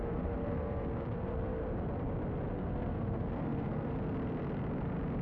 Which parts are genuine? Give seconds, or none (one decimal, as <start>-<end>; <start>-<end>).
1.6-2.5; 3.9-5.2

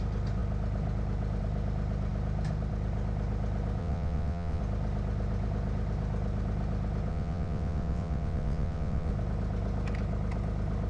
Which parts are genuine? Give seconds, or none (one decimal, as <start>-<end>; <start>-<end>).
0.0-3.8; 4.6-7.1; 9.1-10.9

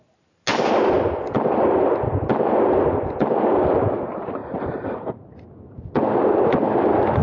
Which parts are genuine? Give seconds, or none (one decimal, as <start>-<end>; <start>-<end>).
0.0-7.2

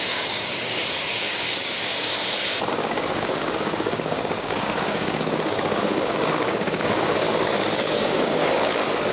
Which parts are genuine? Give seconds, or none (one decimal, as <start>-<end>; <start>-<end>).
2.1-2.7

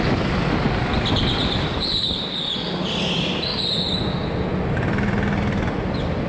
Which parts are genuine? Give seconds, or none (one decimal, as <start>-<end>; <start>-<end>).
3.5-6.3

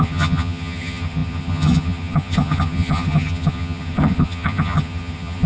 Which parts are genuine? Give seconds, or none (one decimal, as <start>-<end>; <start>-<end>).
none

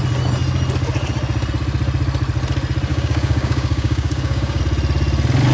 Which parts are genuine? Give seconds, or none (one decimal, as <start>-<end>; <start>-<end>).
0.0-2.9; 4.6-5.5